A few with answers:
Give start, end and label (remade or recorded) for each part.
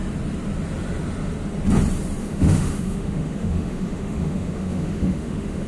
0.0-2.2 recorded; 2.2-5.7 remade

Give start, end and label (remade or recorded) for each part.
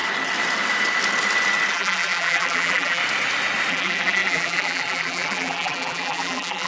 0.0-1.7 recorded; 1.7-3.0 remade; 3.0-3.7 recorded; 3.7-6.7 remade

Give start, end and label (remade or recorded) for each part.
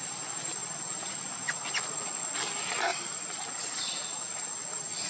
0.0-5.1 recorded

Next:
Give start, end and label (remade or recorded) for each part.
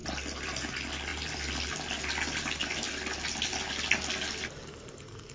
0.0-5.3 recorded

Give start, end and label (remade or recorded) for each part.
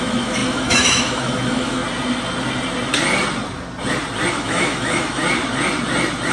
0.0-1.8 remade; 1.8-4.3 recorded; 4.3-5.2 remade; 5.2-6.3 recorded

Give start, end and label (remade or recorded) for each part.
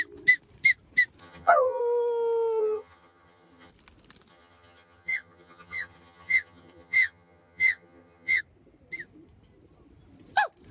0.0-1.2 recorded; 1.2-1.8 remade; 1.8-2.6 recorded; 2.6-3.7 remade; 3.7-4.3 recorded; 4.3-8.4 remade; 8.4-10.7 recorded